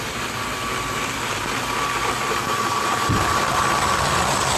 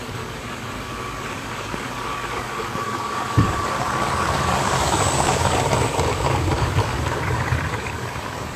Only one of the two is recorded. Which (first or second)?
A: first